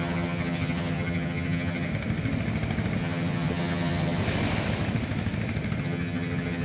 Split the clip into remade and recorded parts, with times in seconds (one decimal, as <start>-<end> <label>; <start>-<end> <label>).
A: 0.0-1.9 remade; 1.9-3.0 recorded; 3.0-4.2 remade; 4.2-5.8 recorded; 5.8-6.6 remade

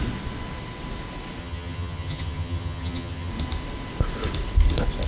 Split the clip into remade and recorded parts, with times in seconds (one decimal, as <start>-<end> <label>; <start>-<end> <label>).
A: 0.0-1.4 recorded; 1.4-3.3 remade; 3.3-5.1 recorded

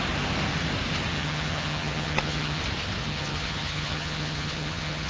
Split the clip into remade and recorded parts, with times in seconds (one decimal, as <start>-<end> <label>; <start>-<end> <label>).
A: 0.0-1.1 recorded; 1.1-2.6 remade; 2.6-3.0 recorded; 3.0-5.1 remade

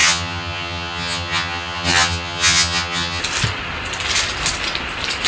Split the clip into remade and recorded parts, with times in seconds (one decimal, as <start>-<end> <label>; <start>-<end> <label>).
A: 0.0-3.2 remade; 3.2-5.3 recorded

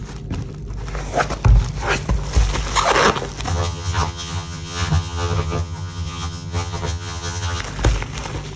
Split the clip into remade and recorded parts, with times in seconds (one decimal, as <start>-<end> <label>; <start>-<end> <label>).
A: 0.0-3.5 recorded; 3.5-7.6 remade; 7.6-8.6 recorded

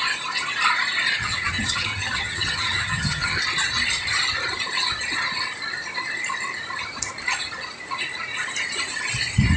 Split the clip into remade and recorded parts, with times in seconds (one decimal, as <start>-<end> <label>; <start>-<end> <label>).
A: 0.0-1.2 recorded; 1.2-3.4 remade; 3.4-9.6 recorded